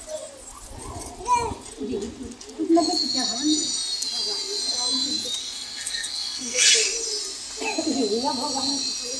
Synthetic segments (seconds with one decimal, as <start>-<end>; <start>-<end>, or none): 5.4-6.7